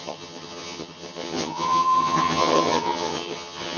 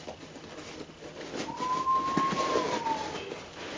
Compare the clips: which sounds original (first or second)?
second